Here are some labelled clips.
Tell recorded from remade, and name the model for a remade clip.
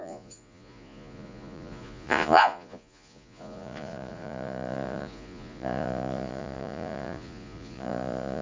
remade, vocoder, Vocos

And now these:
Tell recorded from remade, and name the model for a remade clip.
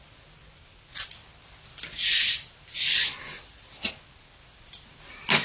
recorded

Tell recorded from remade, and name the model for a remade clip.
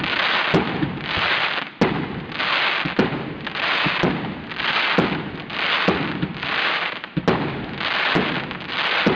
recorded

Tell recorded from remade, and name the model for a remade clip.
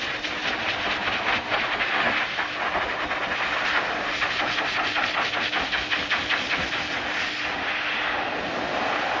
recorded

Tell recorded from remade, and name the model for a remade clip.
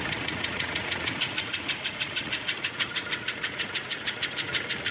remade, vocoder, Vocos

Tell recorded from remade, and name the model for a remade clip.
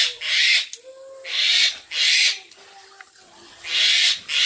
recorded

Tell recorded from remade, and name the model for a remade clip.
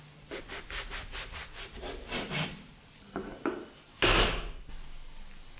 recorded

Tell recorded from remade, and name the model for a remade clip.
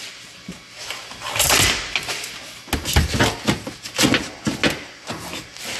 recorded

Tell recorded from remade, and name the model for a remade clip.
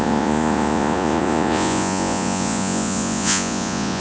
remade, vocoder, Vocos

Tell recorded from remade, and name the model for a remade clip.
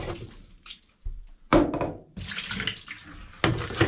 recorded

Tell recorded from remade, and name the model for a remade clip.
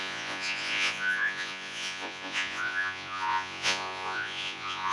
remade, vocoder, Vocos